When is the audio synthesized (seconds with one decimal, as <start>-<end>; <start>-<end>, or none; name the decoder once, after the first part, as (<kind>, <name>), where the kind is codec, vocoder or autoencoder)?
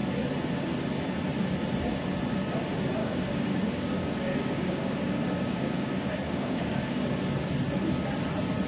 3.0-7.2 (codec, DAC)